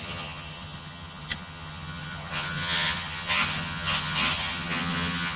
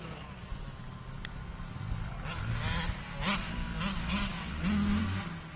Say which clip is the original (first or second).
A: second